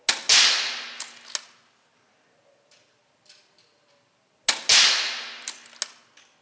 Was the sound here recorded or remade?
recorded